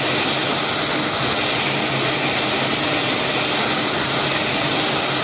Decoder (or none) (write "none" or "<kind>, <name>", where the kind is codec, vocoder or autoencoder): none